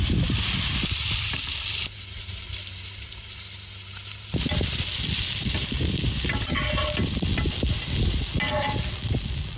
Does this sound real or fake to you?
real